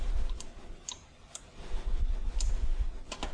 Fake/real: fake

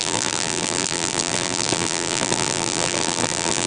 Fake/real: fake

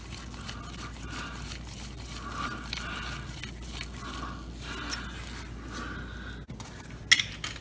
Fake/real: real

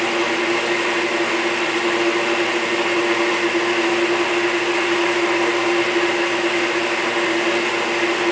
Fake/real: real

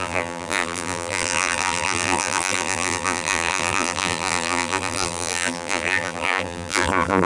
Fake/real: fake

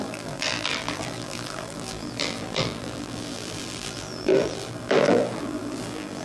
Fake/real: fake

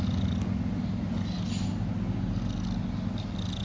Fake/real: real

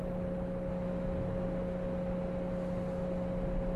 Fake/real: real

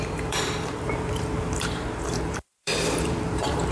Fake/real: fake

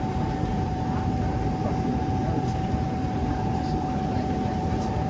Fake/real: fake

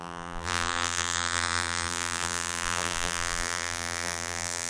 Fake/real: fake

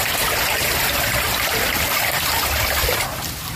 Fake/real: fake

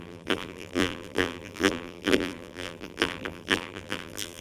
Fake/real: fake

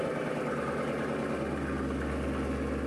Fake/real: real